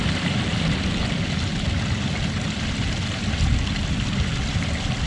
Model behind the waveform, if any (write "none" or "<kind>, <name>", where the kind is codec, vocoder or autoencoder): none